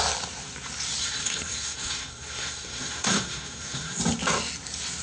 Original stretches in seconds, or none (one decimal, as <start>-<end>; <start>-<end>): 0.0-1.0; 4.0-5.0